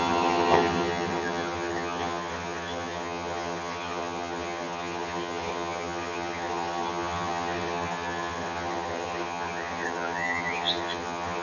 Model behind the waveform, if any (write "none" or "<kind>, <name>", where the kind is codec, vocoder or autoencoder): vocoder, HiFi-GAN